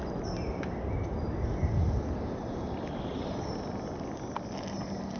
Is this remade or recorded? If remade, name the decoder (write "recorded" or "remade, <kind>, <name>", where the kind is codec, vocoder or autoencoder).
recorded